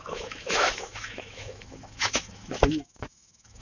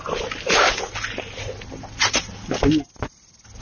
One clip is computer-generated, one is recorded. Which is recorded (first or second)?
second